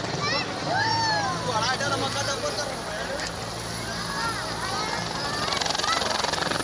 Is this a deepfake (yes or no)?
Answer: no